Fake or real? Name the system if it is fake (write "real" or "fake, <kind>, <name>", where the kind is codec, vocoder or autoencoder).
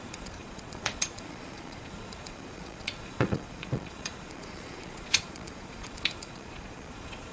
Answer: fake, vocoder, Vocos